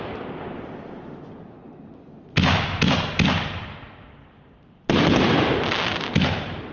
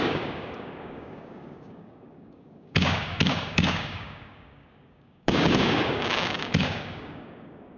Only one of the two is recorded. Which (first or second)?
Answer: first